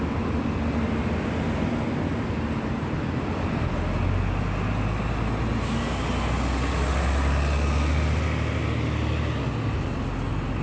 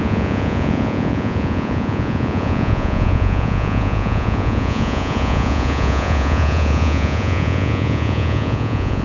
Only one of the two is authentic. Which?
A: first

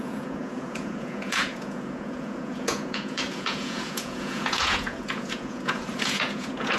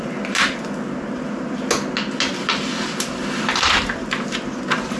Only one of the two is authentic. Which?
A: second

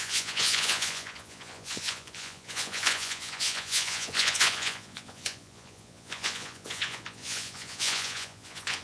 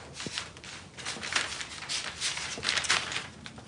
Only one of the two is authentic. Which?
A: second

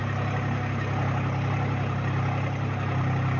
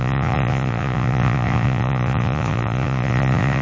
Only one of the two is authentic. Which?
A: first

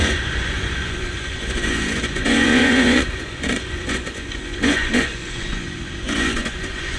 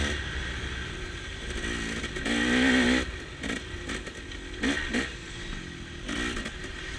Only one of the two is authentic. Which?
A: second